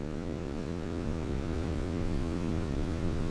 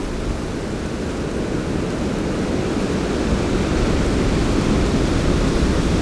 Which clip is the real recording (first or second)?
second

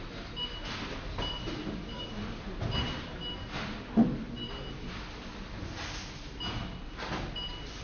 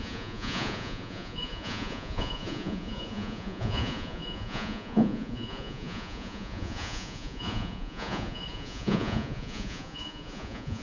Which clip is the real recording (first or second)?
first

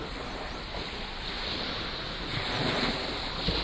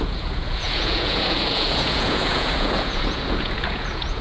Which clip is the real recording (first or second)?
first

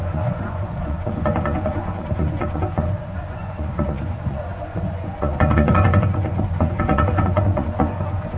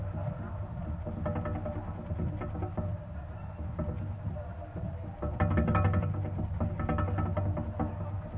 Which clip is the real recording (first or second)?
second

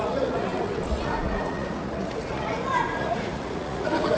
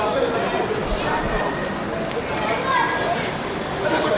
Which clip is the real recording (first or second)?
second